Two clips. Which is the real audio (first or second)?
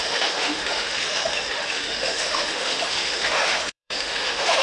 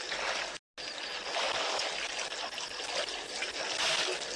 second